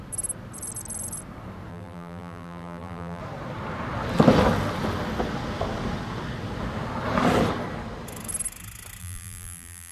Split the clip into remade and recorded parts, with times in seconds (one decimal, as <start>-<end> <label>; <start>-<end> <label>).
0.0-1.7 recorded; 1.7-3.2 remade; 3.2-9.0 recorded; 9.0-9.9 remade